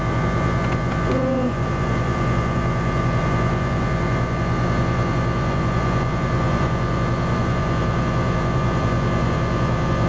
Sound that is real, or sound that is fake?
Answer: fake